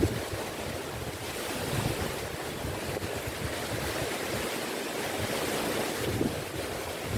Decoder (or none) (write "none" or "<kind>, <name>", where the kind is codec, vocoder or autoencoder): none